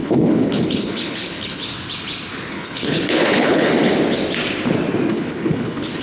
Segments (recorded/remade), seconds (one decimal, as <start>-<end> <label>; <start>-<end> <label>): 0.0-1.7 remade; 1.7-2.5 recorded; 2.5-3.7 remade; 3.7-5.1 recorded; 5.1-6.0 remade